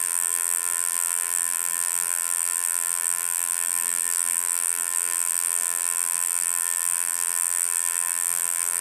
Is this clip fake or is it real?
fake